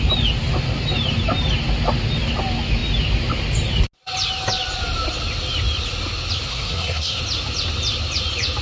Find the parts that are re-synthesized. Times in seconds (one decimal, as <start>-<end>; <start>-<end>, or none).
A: 6.5-7.2